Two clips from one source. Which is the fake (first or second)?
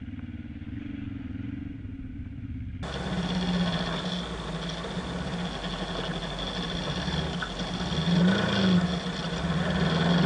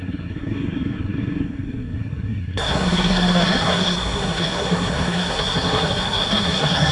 second